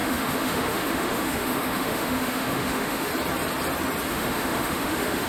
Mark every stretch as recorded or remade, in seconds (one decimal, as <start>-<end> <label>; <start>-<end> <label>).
0.0-3.1 remade; 3.1-4.1 recorded; 4.1-5.3 remade